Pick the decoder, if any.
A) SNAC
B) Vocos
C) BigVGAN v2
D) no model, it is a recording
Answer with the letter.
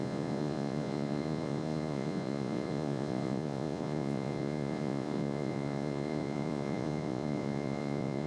B